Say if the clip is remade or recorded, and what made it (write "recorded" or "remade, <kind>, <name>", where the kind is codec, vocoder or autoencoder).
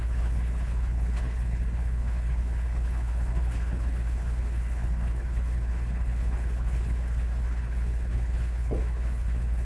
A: remade, codec, HILCodec